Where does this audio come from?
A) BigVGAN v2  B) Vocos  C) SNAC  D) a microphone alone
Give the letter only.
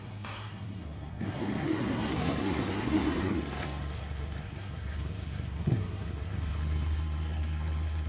C